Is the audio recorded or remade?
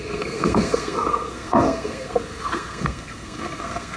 remade